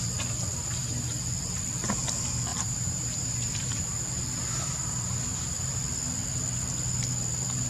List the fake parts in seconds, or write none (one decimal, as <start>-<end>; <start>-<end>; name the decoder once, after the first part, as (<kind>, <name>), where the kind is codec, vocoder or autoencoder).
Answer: 0.6-1.1 (vocoder, BigVGAN v2); 2.5-3.8; 4.4-5.8